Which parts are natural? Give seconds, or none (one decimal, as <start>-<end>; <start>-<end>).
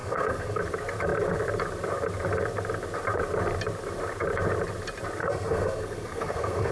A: 0.6-5.2